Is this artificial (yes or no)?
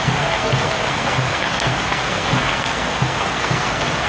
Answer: yes